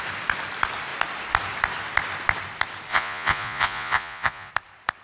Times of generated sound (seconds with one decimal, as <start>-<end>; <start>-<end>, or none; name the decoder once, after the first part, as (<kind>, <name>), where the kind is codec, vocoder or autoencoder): 2.9-4.5 (vocoder, Vocos)

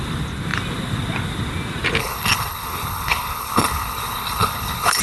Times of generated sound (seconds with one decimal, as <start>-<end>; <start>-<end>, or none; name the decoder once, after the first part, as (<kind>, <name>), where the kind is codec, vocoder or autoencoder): 2.0-5.0 (codec, HILCodec)

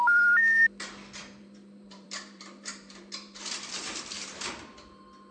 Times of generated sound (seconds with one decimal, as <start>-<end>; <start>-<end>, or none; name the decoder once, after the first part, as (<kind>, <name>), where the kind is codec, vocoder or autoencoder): 1.2-4.4 (vocoder, BigVGAN v2)

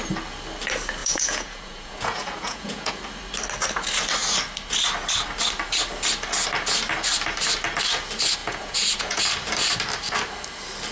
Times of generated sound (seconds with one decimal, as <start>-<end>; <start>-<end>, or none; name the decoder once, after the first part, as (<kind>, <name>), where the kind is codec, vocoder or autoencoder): 1.0-2.9 (vocoder, Vocos); 8.4-9.2